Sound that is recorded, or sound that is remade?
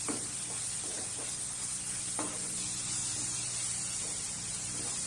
recorded